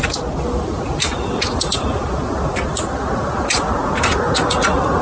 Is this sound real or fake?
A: real